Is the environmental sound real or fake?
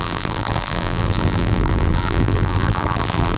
fake